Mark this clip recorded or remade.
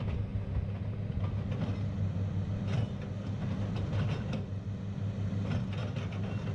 recorded